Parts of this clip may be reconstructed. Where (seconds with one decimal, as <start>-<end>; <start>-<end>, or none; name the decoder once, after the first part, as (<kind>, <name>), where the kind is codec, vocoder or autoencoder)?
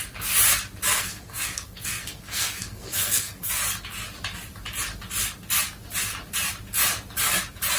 0.9-3.5 (codec, SNAC)